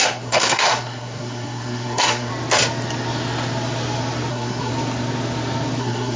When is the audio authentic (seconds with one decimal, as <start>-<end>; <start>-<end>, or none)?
2.3-4.3; 4.7-5.8